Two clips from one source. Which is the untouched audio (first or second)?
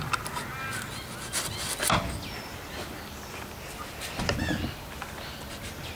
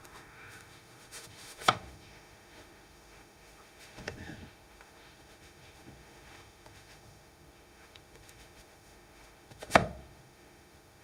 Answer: first